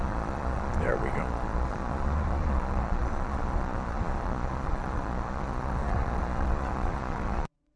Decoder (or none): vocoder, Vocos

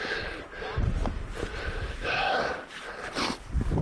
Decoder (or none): none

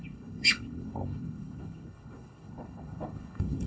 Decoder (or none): codec, HILCodec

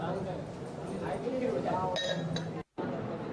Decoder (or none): none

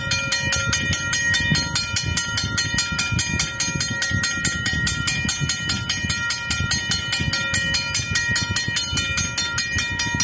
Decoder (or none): none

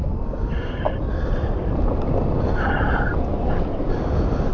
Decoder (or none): none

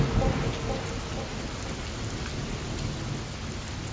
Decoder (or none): none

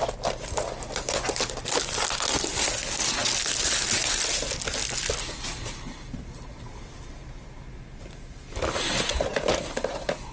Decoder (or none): none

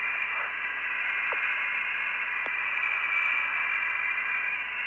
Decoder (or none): none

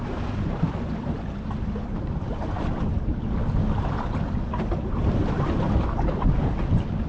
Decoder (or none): none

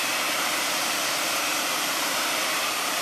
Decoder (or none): vocoder, BigVGAN v2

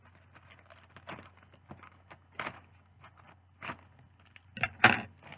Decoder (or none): none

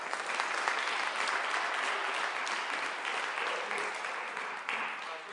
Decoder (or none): none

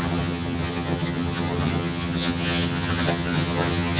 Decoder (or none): vocoder, HiFi-GAN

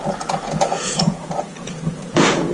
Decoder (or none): vocoder, Vocos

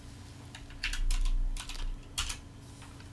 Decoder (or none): none